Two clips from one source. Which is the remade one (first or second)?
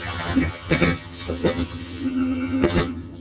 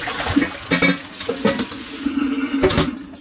first